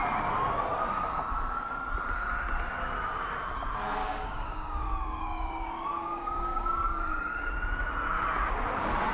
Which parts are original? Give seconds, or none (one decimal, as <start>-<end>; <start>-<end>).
0.0-4.0; 7.5-9.1